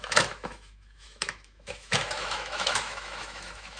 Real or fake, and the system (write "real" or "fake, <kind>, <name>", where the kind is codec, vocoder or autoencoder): fake, autoencoder, DAC-VAE